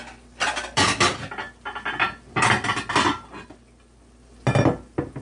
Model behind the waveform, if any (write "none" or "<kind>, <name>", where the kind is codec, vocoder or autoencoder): none